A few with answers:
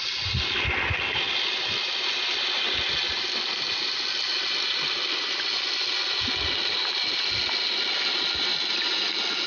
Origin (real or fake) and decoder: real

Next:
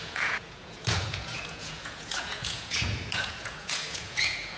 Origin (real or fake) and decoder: fake, vocoder, Vocos